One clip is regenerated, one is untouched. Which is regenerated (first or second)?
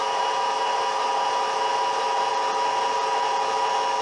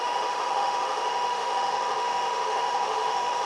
second